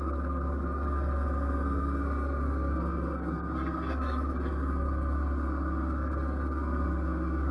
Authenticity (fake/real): fake